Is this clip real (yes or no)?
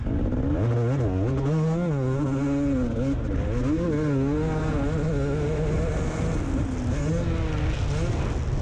yes